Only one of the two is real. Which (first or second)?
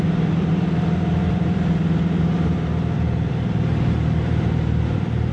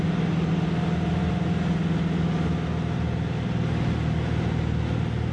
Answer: second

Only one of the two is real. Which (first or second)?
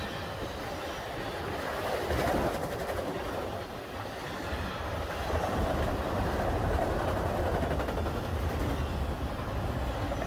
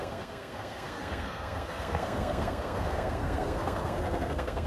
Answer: first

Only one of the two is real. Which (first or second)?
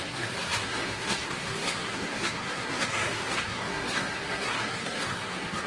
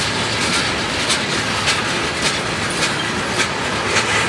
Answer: second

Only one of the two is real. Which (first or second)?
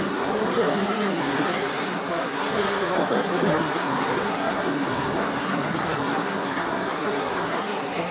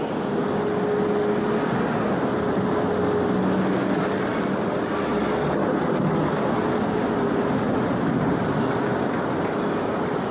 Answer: second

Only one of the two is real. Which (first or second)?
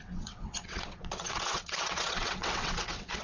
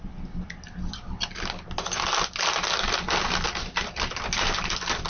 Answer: second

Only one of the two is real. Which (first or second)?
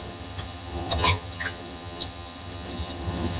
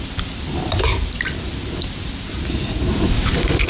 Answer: second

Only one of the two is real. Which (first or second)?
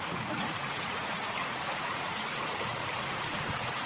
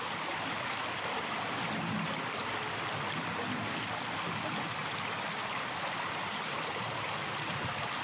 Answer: second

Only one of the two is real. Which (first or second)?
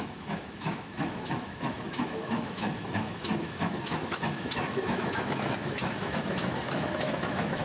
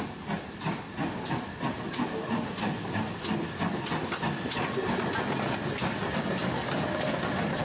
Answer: second